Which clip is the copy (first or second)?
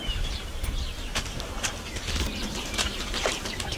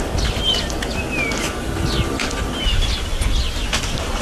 first